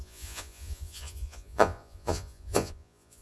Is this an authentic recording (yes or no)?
no